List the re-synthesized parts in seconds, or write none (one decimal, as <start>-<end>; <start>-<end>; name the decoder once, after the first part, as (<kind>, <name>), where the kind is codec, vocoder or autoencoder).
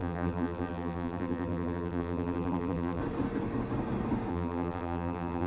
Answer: 0.0-3.0 (vocoder, BigVGAN v2); 4.3-5.5